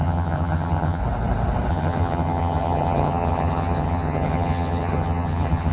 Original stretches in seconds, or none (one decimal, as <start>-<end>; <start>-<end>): 1.0-1.7